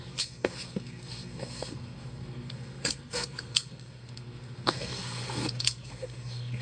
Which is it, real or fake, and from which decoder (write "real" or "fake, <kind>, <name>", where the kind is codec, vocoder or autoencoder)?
fake, codec, SNAC